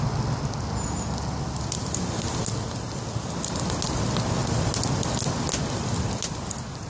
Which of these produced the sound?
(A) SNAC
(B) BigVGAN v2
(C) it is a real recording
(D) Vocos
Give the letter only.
C